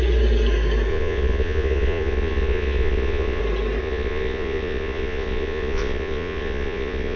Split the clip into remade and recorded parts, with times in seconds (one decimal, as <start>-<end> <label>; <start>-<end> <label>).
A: 0.0-0.9 recorded; 0.9-3.4 remade; 3.4-3.8 recorded; 3.8-7.2 remade